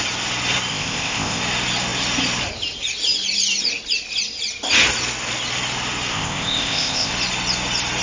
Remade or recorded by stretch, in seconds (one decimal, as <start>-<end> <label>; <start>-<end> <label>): 0.0-0.7 recorded; 0.7-1.4 remade; 1.4-6.1 recorded; 6.1-7.1 remade; 7.1-8.0 recorded